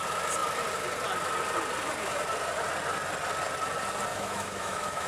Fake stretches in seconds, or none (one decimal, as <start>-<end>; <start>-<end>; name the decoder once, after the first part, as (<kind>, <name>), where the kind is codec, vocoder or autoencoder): 4.1-5.1 (autoencoder, DAC-VAE)